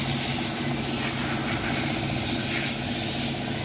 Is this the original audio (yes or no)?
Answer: yes